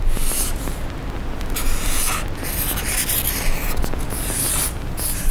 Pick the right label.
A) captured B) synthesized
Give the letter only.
A